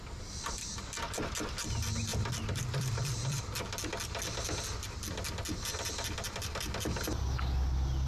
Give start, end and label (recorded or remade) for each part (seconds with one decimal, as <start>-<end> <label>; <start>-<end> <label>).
0.0-2.1 recorded; 2.1-3.4 remade; 3.4-8.1 recorded